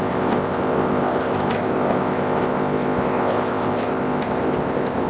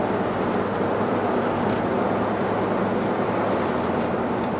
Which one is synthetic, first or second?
first